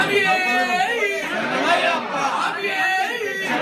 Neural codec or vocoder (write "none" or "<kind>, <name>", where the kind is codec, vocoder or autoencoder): none